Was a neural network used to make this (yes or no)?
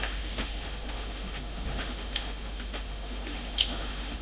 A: yes